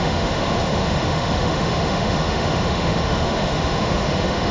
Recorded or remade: remade